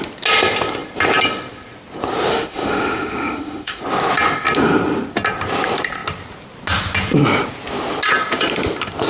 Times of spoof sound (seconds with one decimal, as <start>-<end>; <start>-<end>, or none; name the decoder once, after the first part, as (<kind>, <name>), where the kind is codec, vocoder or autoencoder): 2.3-3.8 (autoencoder, DAC-VAE)